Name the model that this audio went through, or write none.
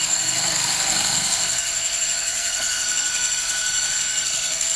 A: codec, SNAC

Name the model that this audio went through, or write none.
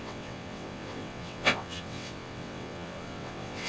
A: vocoder, WaveNeXt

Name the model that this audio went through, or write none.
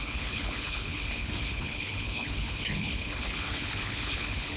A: codec, HILCodec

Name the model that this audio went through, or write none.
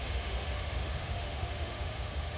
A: autoencoder, DAC-VAE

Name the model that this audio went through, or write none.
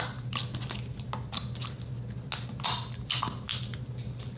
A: none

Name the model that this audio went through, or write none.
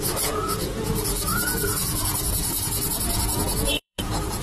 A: vocoder, Vocos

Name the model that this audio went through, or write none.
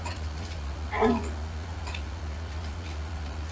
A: vocoder, Vocos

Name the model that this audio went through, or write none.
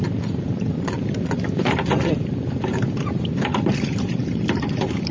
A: vocoder, BigVGAN v2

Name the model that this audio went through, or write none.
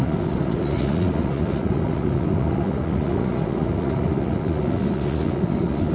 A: vocoder, Vocos